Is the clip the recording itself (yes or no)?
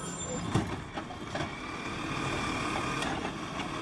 yes